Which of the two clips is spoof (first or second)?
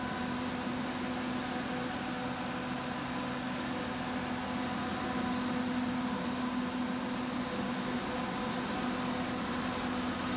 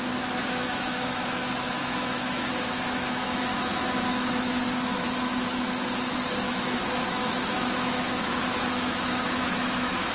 second